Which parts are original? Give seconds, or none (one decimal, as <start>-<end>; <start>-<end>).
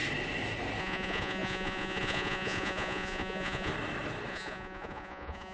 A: 0.0-0.8; 3.7-4.3